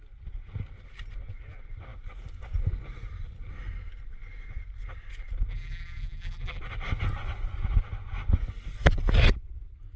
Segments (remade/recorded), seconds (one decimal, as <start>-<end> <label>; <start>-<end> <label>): 0.0-5.5 recorded; 5.5-6.6 remade; 6.6-10.0 recorded